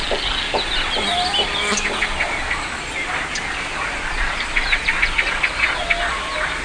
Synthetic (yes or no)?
no